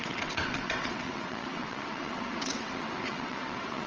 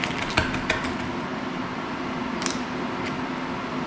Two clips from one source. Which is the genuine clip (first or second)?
second